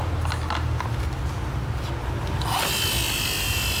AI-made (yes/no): no